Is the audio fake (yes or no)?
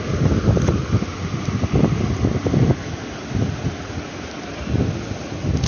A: no